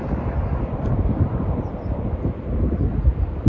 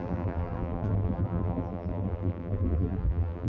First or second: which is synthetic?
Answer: second